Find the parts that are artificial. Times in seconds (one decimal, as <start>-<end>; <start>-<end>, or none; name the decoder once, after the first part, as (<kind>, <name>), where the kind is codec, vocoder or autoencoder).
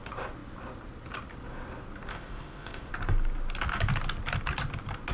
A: 2.1-2.9 (codec, ZipCodec)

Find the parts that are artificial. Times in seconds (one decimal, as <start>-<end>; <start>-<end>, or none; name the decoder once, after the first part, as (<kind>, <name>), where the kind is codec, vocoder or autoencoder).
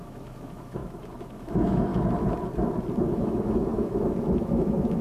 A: 0.0-1.9 (autoencoder, DAC-VAE); 3.0-5.0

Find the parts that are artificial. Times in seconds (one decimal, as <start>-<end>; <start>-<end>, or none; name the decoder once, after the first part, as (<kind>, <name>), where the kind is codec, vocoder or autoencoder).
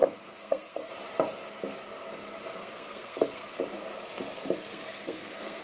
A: 0.0-0.9 (codec, SNAC); 2.5-3.6; 4.7-5.6